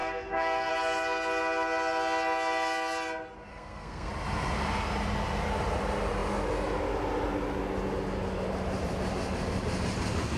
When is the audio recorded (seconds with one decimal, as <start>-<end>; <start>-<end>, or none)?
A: 0.7-3.5; 4.1-10.4